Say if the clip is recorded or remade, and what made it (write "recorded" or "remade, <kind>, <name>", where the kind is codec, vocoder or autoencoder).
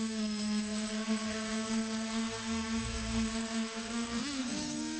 remade, codec, SNAC